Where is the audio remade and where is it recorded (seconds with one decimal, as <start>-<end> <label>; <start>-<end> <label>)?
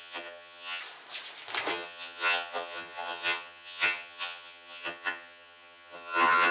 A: 0.0-0.8 remade; 0.8-1.7 recorded; 1.7-6.5 remade